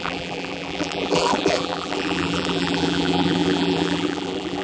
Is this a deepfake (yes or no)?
yes